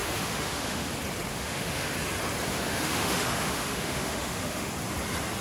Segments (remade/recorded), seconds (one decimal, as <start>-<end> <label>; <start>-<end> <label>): 0.0-0.9 remade; 0.9-1.3 recorded; 1.3-1.9 remade; 1.9-2.5 recorded; 2.5-4.7 remade; 4.7-5.4 recorded